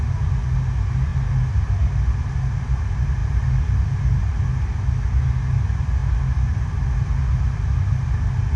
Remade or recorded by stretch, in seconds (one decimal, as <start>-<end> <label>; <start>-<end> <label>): 0.0-8.6 recorded

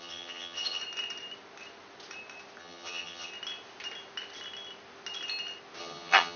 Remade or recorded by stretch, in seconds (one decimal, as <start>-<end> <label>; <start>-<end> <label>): 0.0-0.8 remade; 0.8-2.6 recorded; 2.6-3.3 remade; 3.3-5.8 recorded; 5.8-6.4 remade

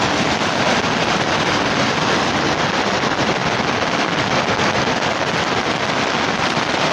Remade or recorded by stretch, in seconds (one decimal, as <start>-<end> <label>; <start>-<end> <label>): 0.0-6.9 recorded

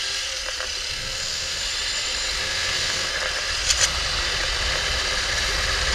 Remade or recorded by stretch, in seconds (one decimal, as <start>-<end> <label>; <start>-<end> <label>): 0.0-0.9 recorded; 0.9-1.6 remade; 1.6-2.4 recorded; 2.4-3.1 remade; 3.1-5.9 recorded

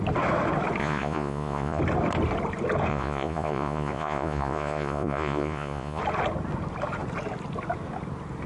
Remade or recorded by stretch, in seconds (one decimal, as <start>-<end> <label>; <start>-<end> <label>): 0.0-0.8 recorded; 0.8-1.8 remade; 1.8-2.9 recorded; 2.9-6.0 remade; 6.0-8.5 recorded

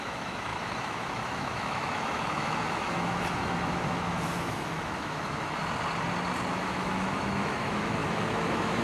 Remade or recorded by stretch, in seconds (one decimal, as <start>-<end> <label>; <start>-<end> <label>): 0.0-5.6 remade; 5.6-6.5 recorded; 6.5-8.8 remade

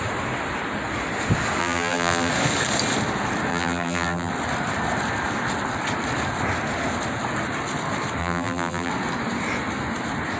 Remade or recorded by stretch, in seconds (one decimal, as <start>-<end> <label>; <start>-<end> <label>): 0.0-1.6 recorded; 1.6-2.3 remade; 2.3-3.5 recorded; 3.5-4.3 remade; 4.3-8.2 recorded; 8.2-8.9 remade; 8.9-10.4 recorded

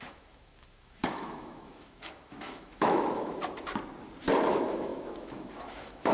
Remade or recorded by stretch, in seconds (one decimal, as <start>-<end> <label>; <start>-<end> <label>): 0.0-3.4 remade; 3.4-4.5 recorded; 4.5-6.1 remade